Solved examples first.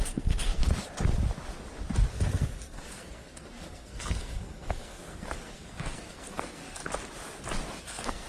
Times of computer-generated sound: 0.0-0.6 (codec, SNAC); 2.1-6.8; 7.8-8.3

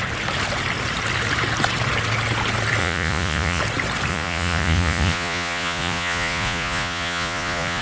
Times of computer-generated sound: 2.8-3.6 (vocoder, Vocos); 4.1-7.8

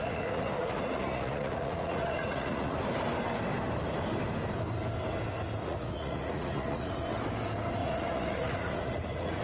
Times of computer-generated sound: 0.0-2.8 (vocoder, Vocos); 5.6-6.9; 7.8-9.4